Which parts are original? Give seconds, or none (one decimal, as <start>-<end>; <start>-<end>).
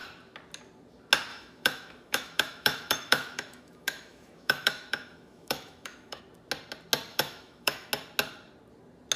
0.0-1.3; 6.2-7.1; 7.9-9.2